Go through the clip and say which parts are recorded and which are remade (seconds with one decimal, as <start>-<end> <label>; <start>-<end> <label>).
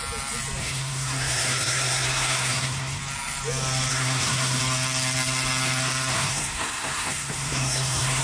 0.0-0.6 recorded; 0.6-3.0 remade; 3.0-3.9 recorded; 3.9-4.6 remade; 4.6-6.1 recorded; 6.1-8.2 remade